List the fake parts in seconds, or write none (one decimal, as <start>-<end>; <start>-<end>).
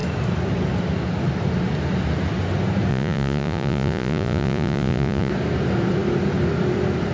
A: 2.9-5.3